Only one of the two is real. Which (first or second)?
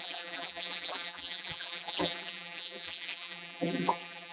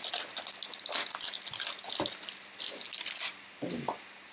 second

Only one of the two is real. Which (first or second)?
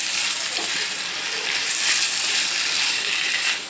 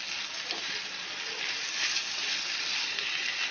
second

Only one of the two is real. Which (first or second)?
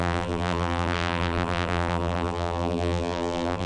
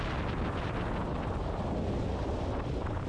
second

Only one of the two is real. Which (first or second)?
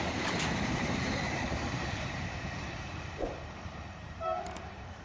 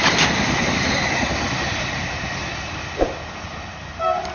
second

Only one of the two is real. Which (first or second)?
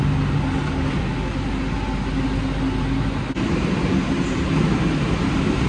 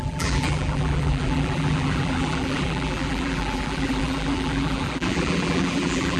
first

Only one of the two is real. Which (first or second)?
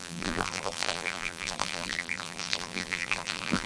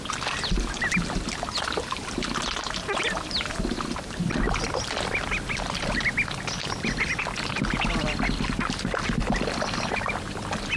second